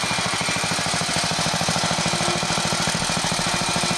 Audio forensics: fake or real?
real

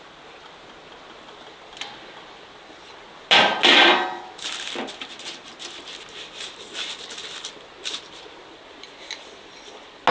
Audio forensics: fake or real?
real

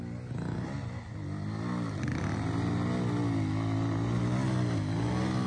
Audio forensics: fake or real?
real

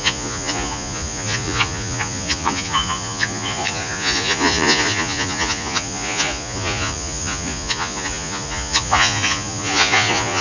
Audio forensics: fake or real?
fake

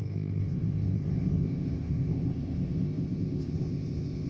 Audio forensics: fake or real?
fake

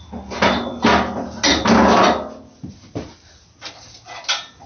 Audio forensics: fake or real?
real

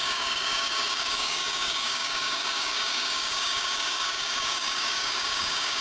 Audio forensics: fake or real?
fake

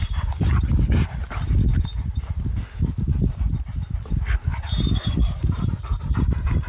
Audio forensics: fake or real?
real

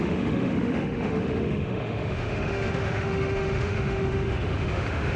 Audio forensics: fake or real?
fake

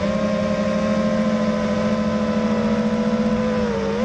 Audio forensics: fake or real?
real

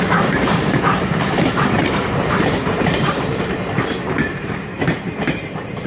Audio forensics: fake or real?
fake